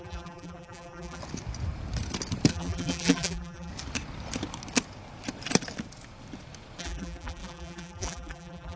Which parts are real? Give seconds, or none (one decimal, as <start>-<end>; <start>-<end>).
1.2-2.5; 3.7-6.8